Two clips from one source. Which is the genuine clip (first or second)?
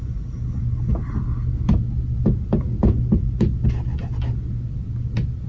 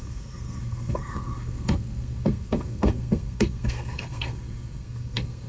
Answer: first